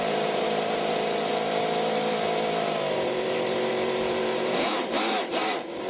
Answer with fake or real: fake